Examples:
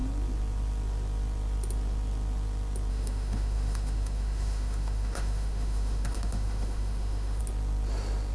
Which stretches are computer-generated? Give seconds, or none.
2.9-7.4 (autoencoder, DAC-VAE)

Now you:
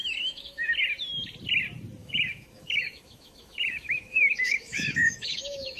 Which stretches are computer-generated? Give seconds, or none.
0.0-0.7 (autoencoder, DAC-VAE); 2.0-5.8

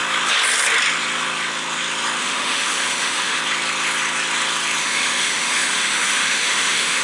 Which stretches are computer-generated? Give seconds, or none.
2.2-3.4 (autoencoder, DAC-VAE); 4.8-7.0

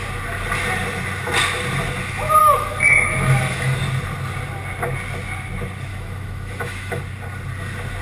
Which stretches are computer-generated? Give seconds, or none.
2.4-3.8 (autoencoder, DAC-VAE); 5.9-7.0